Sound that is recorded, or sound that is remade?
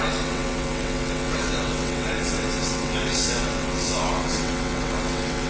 remade